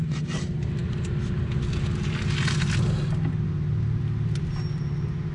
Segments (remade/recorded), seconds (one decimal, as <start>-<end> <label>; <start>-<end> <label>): 0.0-5.3 recorded

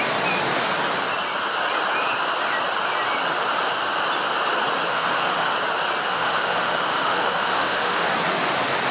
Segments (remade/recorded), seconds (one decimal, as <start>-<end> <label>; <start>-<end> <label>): 0.0-4.9 recorded; 4.9-5.5 remade; 5.5-6.1 recorded; 6.1-8.1 remade; 8.1-8.9 recorded

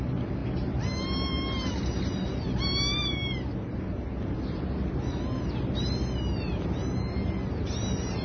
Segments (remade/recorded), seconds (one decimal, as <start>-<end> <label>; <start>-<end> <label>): 0.0-8.2 recorded

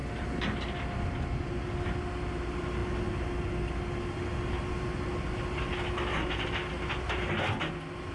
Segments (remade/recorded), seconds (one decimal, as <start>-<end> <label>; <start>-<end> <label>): 0.0-8.1 recorded

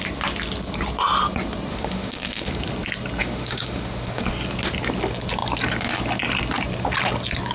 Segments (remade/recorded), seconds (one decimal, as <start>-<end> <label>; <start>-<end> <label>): 0.0-1.7 recorded; 1.7-2.5 remade; 2.5-3.2 recorded; 3.2-4.2 remade; 4.2-7.5 recorded

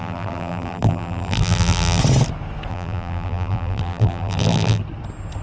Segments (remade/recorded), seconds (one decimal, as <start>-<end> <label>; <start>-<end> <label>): 0.0-2.0 remade; 2.0-2.7 recorded; 2.7-4.8 remade; 4.8-5.4 recorded

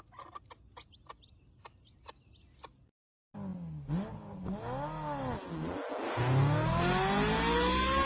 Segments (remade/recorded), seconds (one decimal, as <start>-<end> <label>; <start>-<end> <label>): 0.0-8.1 recorded

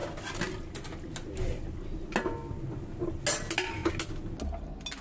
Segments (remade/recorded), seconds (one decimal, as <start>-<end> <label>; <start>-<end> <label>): 0.0-5.0 recorded